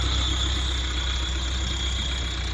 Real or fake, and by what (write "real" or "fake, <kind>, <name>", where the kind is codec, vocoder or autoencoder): real